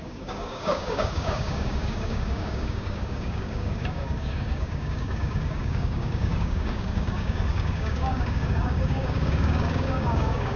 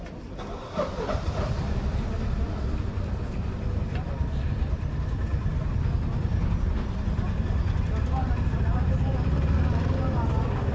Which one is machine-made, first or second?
first